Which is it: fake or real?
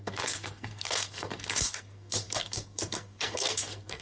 fake